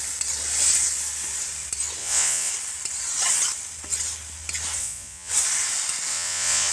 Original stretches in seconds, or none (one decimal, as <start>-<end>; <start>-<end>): 0.0-2.0; 2.5-4.8; 5.3-6.1